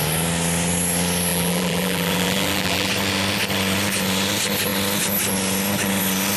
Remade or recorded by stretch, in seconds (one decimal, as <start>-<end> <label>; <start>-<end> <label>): 0.0-1.3 recorded; 1.3-2.9 remade; 2.9-6.4 recorded